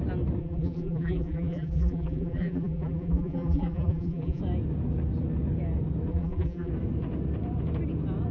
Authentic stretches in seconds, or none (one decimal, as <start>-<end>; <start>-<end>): 0.0-0.4; 4.4-6.1; 6.7-8.3